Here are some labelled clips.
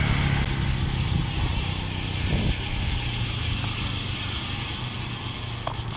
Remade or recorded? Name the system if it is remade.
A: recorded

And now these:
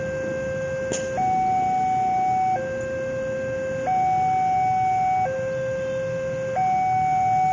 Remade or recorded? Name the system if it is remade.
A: recorded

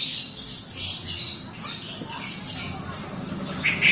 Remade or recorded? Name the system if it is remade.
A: recorded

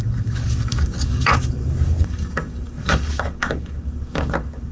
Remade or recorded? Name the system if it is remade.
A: remade, codec, DAC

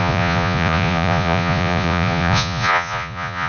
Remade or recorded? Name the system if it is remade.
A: remade, vocoder, Vocos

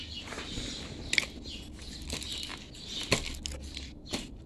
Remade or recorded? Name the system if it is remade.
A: recorded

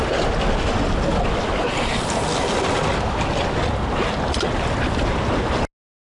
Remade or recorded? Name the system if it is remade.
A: recorded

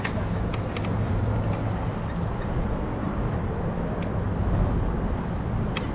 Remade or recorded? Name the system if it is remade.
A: recorded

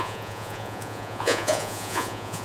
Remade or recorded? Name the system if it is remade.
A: remade, vocoder, Vocos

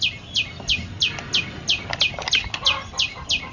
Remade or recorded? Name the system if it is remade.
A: recorded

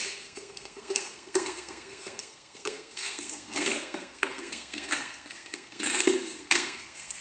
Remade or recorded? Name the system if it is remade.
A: remade, codec, SNAC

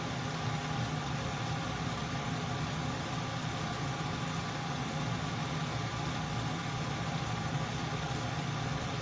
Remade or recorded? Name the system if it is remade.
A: recorded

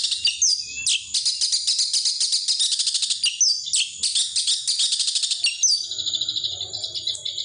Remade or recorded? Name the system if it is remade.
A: recorded